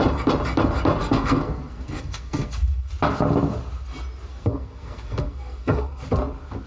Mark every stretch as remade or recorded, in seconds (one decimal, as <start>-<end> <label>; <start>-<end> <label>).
0.0-1.0 recorded; 1.0-2.9 remade; 2.9-4.3 recorded; 4.3-6.0 remade; 6.0-6.7 recorded

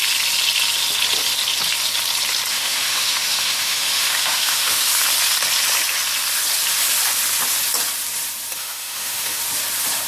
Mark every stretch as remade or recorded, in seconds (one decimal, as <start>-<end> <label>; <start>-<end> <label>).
0.0-2.5 recorded; 2.5-4.9 remade; 4.9-8.6 recorded; 8.6-9.4 remade; 9.4-10.1 recorded

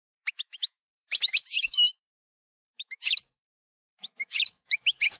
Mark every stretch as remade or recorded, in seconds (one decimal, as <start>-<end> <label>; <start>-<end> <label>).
0.0-5.2 remade

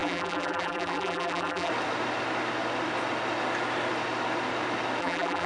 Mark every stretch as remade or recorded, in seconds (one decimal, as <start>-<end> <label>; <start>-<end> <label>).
0.0-1.7 remade; 1.7-5.0 recorded; 5.0-5.5 remade

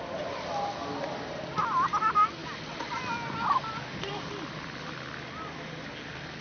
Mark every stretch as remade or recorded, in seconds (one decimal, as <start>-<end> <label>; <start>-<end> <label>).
0.0-6.4 recorded

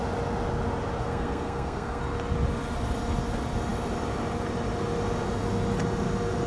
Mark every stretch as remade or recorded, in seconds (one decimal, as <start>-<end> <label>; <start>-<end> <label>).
0.0-1.0 recorded; 1.0-2.0 remade; 2.0-6.5 recorded